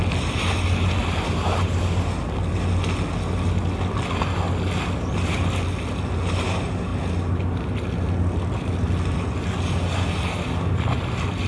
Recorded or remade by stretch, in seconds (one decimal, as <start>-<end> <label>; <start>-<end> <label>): 0.0-1.0 recorded; 1.0-1.8 remade; 1.8-11.5 recorded

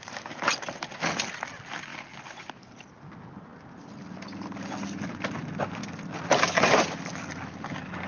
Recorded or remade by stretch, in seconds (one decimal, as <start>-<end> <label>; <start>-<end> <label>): 0.0-1.9 recorded; 1.9-3.1 remade; 3.1-8.1 recorded

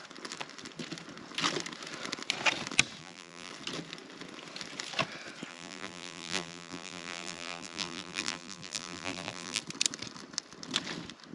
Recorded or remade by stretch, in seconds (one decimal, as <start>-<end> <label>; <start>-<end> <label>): 0.0-3.0 recorded; 3.0-3.5 remade; 3.5-5.5 recorded; 5.5-9.6 remade; 9.6-11.3 recorded